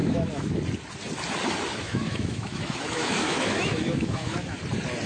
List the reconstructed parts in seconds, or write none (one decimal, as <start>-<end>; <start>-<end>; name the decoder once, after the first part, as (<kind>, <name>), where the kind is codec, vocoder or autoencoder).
0.0-0.5 (autoencoder, DAC-VAE); 1.7-4.6